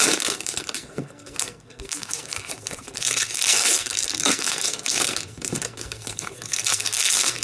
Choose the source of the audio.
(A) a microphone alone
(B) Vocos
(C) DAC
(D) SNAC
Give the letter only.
D